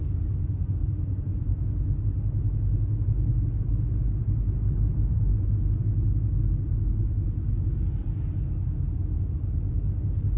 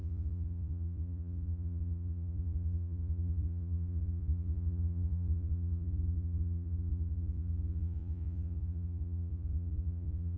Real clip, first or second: first